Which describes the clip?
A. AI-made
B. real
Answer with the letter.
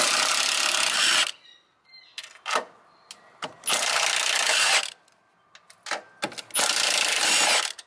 B